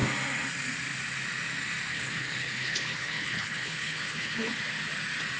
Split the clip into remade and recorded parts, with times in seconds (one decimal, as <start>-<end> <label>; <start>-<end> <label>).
0.0-1.9 recorded; 1.9-4.5 remade; 4.5-5.4 recorded